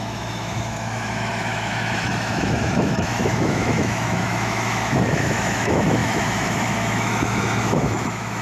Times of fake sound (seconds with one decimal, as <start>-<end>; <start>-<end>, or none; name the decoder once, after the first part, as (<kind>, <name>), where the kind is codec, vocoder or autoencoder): 0.0-8.4 (autoencoder, DAC-VAE)